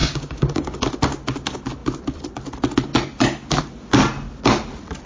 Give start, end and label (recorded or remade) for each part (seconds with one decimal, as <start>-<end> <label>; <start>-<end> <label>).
0.0-0.9 remade; 0.9-5.1 recorded